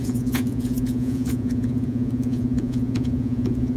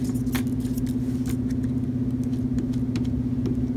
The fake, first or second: first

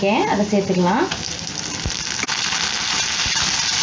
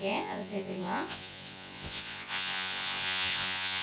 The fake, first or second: second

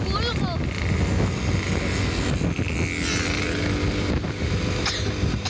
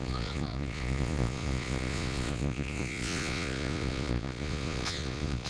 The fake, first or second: second